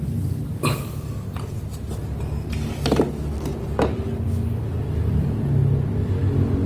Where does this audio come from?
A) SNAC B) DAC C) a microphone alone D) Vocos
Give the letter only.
C